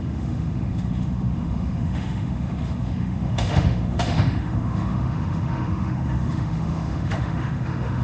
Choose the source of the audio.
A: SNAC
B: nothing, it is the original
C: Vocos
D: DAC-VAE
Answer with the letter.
D